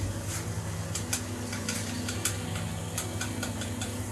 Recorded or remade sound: recorded